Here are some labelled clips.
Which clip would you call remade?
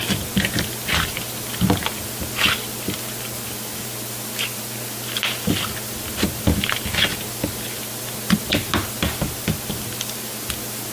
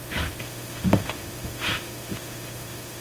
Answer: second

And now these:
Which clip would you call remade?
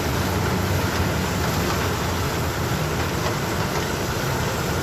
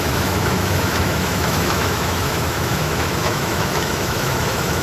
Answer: second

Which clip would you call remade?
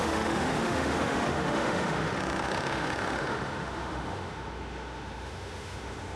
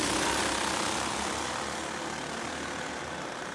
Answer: first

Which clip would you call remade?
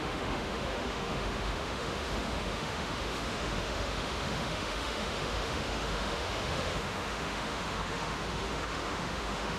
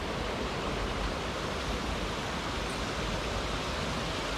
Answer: first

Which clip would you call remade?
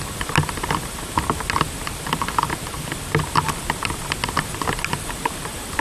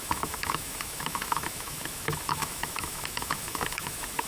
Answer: second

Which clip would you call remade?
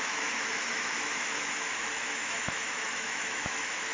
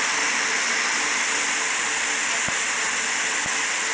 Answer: first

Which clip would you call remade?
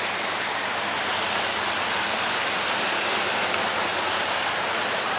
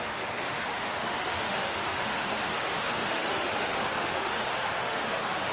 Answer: second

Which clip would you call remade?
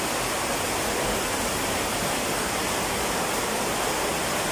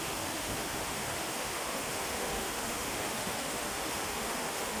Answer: second